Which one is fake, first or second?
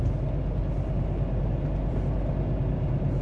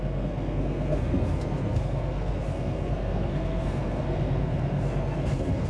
second